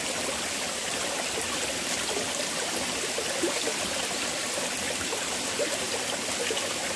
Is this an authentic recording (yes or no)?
yes